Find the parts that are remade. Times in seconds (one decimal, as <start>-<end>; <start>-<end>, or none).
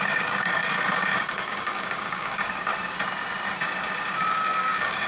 0.0-0.6; 1.3-2.7; 4.1-5.1